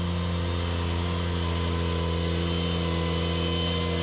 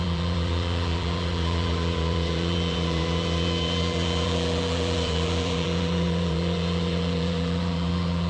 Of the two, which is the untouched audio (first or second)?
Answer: first